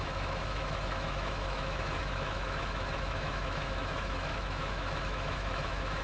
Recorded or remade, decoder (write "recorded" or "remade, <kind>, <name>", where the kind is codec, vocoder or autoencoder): remade, autoencoder, DAC-VAE